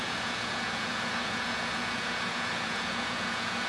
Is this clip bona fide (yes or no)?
no